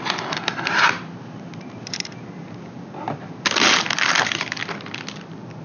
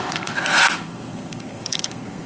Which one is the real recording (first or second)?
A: first